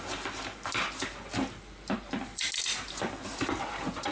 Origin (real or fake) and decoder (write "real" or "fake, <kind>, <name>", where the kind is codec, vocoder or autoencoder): real